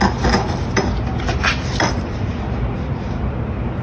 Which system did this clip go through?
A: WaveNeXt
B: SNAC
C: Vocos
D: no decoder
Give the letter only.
D